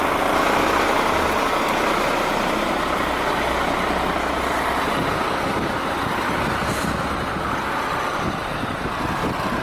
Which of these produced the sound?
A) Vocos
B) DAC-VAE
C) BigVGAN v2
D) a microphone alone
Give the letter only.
D